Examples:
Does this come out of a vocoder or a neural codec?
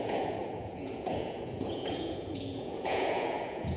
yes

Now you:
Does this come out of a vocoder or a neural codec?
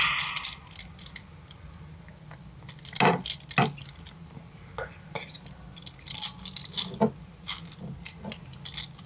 no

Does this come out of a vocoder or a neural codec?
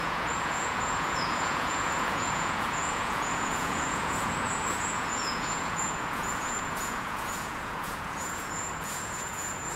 yes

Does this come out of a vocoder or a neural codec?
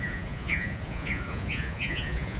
yes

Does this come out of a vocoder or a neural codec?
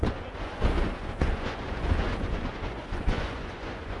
yes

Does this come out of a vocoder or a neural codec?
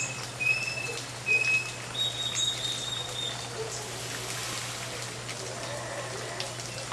no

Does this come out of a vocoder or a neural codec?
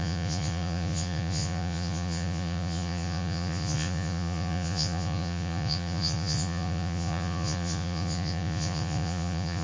yes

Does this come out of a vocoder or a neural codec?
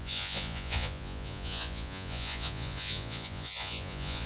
yes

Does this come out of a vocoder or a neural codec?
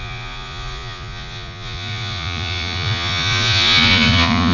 yes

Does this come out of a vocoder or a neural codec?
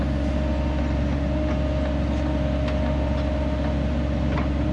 no